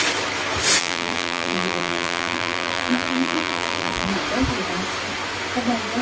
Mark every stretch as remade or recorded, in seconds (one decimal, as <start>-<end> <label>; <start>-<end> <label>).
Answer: 0.0-0.8 recorded; 0.8-4.1 remade; 4.1-6.0 recorded